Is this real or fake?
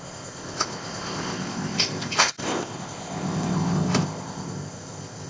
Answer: fake